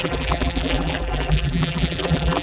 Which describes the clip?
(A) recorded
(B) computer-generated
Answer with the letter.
B